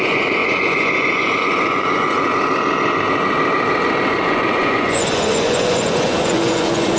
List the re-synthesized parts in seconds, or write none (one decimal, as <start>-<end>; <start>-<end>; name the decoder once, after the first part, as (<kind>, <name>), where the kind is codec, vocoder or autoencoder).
0.0-2.3 (vocoder, Vocos); 4.1-7.0